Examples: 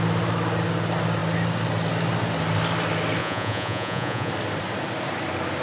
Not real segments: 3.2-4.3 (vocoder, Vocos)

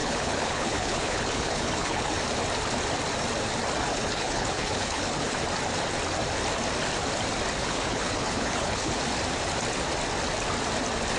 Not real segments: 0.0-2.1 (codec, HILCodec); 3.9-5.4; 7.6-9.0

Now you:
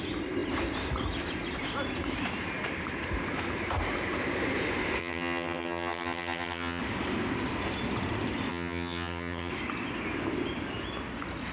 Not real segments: 5.0-6.8 (vocoder, HiFi-GAN); 8.5-9.5

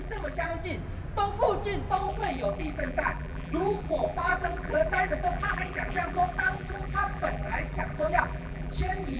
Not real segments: 0.0-0.5 (vocoder, BigVGAN v2); 1.9-9.2

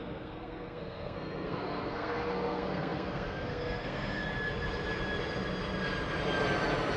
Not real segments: 0.0-4.3 (codec, SNAC)

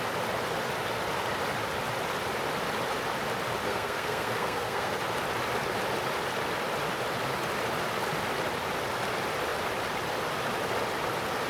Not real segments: 3.6-5.0 (codec, SNAC)